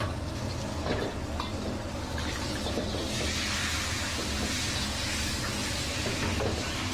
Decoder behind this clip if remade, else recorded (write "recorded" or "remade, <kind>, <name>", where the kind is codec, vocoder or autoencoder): recorded